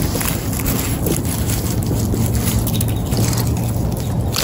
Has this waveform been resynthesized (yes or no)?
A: no